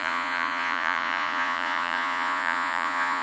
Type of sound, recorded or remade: remade